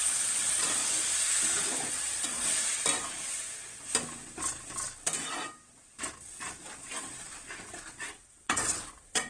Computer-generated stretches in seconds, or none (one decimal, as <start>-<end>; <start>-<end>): 0.0-0.8; 1.9-2.8; 8.0-9.3